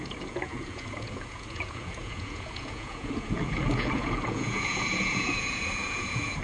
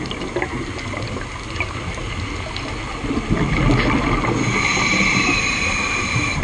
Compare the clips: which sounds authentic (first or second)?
second